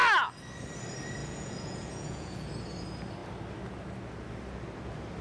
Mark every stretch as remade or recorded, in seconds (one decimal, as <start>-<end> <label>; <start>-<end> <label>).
0.0-1.2 recorded; 1.2-2.5 remade; 2.5-5.2 recorded